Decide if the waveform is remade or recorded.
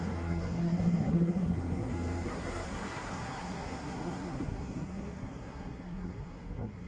remade